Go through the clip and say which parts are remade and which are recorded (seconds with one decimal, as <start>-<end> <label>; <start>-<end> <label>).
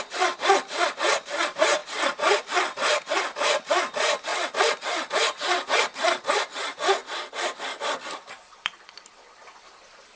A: 0.0-10.2 remade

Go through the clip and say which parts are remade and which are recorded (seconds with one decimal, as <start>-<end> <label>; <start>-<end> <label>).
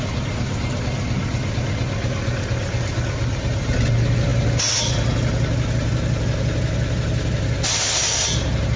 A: 0.0-8.8 recorded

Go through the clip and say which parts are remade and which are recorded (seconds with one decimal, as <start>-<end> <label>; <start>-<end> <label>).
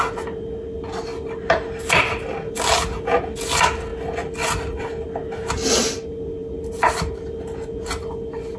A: 0.0-8.6 recorded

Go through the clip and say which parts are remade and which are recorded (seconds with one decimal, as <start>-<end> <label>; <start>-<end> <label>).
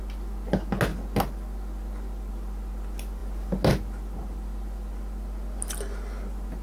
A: 0.0-6.6 recorded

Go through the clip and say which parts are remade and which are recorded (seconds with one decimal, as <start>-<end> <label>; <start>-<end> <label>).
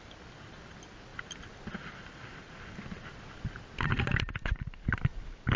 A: 0.0-5.6 recorded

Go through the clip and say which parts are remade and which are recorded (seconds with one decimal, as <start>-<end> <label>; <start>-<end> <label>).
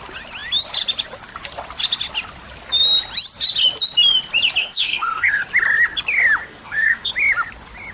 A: 0.0-4.6 recorded; 4.6-5.4 remade; 5.4-6.4 recorded; 6.4-7.1 remade; 7.1-7.9 recorded